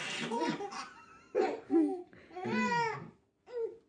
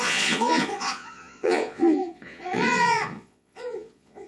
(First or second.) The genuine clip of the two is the first